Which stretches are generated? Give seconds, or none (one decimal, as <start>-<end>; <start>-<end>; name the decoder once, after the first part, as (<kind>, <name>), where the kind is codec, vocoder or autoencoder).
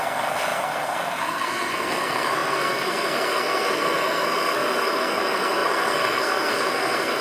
0.0-7.2 (codec, SNAC)